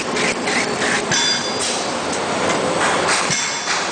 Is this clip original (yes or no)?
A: yes